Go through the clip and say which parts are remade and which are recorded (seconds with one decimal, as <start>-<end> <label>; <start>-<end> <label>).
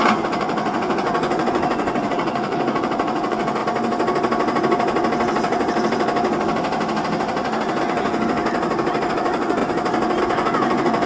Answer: 0.0-3.6 remade; 3.6-7.8 recorded; 7.8-8.4 remade; 8.4-9.1 recorded; 9.1-9.6 remade; 9.6-10.2 recorded; 10.2-11.1 remade